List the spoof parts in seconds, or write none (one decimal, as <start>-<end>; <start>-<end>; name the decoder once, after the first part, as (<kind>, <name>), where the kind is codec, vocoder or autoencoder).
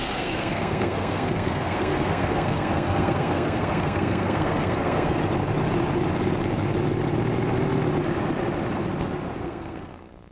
0.0-5.2 (codec, SNAC); 9.4-10.3